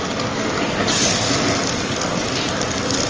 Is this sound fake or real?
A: fake